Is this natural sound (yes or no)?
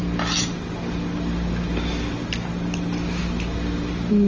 yes